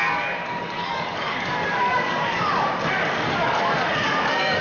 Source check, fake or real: fake